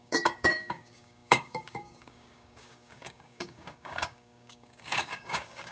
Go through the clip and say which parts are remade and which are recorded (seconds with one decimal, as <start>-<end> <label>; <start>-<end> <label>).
0.0-5.7 remade